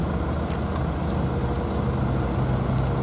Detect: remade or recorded recorded